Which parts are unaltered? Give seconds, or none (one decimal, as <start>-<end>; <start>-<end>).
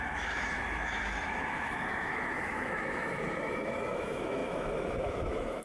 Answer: none